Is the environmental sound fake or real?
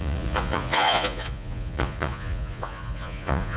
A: fake